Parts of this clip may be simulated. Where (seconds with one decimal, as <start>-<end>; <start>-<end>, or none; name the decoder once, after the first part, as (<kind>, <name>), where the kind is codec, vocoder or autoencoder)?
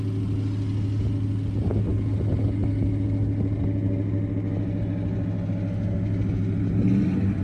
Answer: none